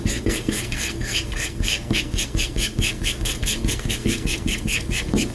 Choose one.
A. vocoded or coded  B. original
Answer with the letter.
A